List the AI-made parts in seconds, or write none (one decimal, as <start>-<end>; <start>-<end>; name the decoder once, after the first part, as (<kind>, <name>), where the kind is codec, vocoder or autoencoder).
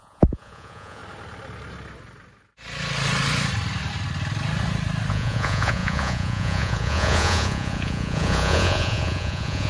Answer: 0.0-1.0 (vocoder, Vocos); 5.1-9.7